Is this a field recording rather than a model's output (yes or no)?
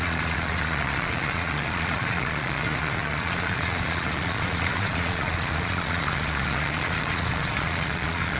no